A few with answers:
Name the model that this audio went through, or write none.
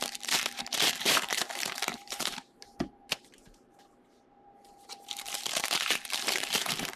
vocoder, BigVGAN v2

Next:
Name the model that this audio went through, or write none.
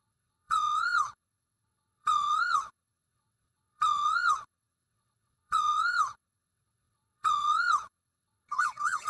vocoder, WaveNeXt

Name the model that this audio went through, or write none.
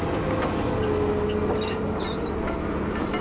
none